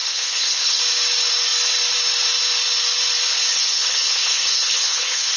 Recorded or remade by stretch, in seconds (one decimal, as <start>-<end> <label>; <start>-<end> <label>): 0.0-0.8 remade; 0.8-3.5 recorded; 3.5-5.4 remade